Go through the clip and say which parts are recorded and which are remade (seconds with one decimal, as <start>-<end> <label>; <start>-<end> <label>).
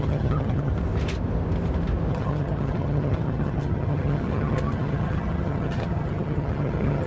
0.0-0.7 remade; 0.7-2.1 recorded; 2.1-7.1 remade